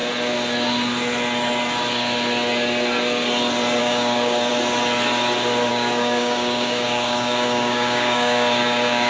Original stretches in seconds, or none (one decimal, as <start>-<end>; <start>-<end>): 0.0-3.8; 4.5-5.7